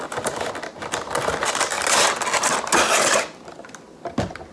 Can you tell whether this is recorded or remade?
recorded